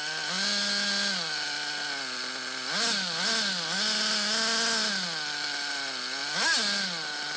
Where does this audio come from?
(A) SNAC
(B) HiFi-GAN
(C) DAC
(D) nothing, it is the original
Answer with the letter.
D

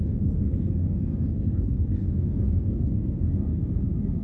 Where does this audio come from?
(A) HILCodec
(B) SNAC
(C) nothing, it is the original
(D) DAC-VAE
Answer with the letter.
B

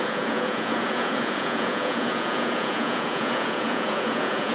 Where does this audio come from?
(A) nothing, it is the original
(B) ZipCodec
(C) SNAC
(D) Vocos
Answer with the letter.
D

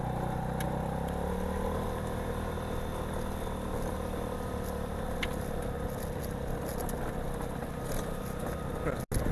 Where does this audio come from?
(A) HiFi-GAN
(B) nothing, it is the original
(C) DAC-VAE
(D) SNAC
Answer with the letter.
B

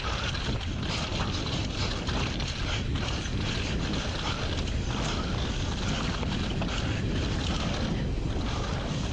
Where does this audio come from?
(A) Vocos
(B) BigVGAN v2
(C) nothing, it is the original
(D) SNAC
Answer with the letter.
C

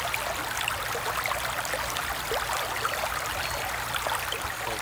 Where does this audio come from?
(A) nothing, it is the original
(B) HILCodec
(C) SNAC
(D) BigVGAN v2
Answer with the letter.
A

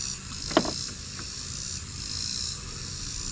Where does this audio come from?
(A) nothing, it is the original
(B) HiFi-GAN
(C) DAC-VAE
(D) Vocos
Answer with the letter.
A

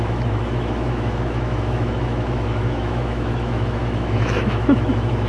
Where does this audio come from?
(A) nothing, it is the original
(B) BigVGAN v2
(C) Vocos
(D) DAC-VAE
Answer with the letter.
D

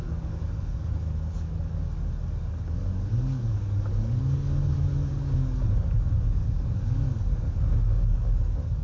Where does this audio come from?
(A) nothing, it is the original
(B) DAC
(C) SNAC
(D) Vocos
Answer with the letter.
B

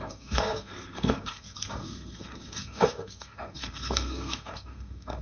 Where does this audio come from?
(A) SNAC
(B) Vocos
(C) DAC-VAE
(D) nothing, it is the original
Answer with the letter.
A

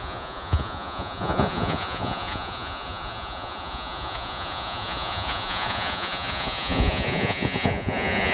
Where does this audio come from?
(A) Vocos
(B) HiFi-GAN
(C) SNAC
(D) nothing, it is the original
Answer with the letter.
A